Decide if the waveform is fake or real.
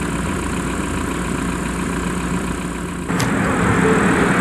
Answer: real